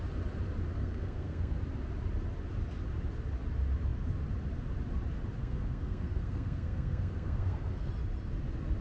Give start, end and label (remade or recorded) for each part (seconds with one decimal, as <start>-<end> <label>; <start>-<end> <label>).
0.0-0.8 recorded; 0.8-1.6 remade; 1.6-5.4 recorded; 5.4-7.9 remade; 7.9-8.8 recorded